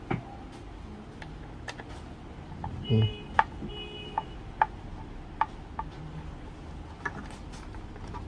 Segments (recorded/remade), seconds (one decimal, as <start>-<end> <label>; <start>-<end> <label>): 0.0-8.3 recorded